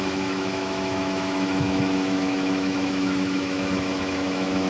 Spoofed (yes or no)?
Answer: yes